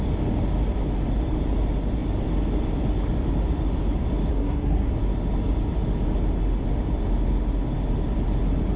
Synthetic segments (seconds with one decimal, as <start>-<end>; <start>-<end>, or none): 4.3-4.9